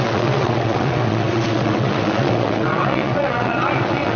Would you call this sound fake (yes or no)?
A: yes